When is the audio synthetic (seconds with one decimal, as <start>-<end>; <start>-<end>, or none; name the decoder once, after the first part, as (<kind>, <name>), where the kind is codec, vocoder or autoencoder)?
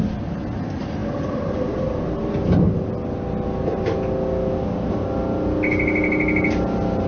none